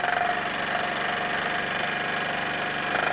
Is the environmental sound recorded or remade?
recorded